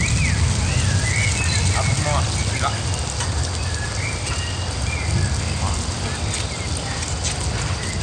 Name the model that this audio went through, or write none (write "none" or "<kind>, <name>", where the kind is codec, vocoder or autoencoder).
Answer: none